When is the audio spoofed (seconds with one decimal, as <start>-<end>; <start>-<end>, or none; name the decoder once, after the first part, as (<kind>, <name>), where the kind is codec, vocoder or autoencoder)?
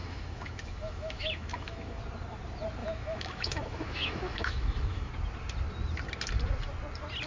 0.0-2.0 (autoencoder, DAC-VAE); 2.8-5.1